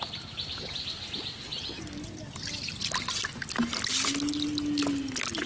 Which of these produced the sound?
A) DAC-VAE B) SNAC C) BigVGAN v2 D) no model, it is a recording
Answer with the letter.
D